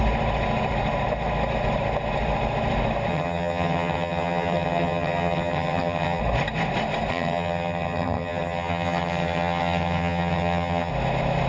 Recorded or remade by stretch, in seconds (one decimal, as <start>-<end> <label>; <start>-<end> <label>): 0.0-3.1 recorded; 3.1-6.2 remade; 6.2-7.1 recorded; 7.1-10.9 remade; 10.9-11.5 recorded